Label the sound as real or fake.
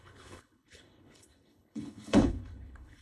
fake